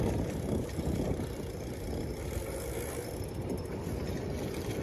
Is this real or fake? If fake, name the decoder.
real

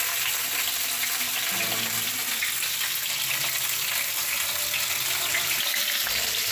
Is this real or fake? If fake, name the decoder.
real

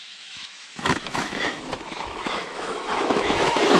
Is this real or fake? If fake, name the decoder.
fake, autoencoder, DAC-VAE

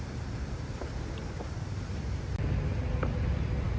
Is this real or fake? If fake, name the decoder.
real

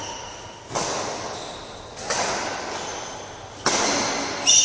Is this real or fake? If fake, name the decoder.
real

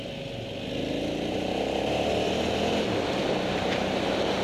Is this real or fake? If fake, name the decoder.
real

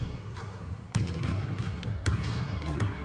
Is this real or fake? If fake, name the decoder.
fake, codec, SNAC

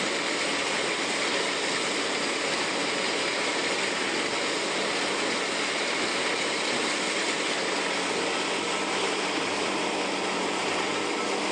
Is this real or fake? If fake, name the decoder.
real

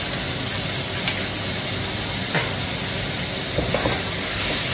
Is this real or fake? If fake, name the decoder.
real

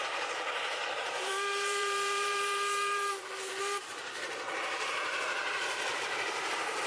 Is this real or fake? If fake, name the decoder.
fake, vocoder, BigVGAN v2